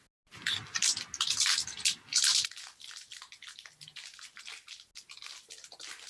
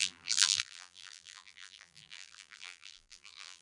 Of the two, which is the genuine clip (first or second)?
first